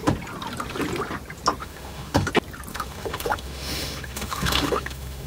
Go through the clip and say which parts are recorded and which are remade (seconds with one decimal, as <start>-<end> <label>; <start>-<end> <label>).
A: 0.0-1.6 recorded; 1.6-2.3 remade; 2.3-2.7 recorded; 2.7-5.3 remade